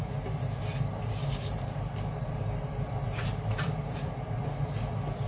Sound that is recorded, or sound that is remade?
remade